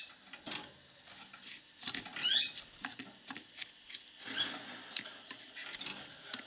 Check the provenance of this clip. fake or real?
real